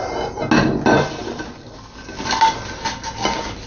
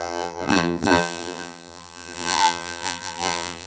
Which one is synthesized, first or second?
second